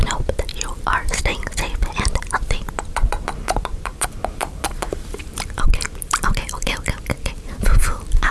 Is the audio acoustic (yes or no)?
no